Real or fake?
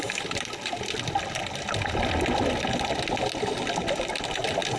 real